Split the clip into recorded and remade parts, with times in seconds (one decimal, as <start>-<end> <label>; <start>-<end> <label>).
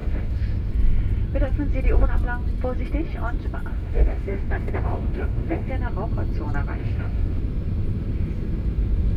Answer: 0.0-0.7 remade; 0.7-3.7 recorded; 3.7-5.7 remade; 5.7-6.8 recorded; 6.8-7.4 remade; 7.4-9.2 recorded